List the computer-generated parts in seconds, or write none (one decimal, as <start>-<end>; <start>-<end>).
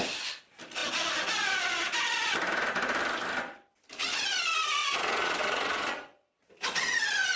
4.8-6.5